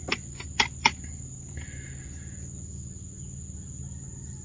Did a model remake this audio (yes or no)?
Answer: no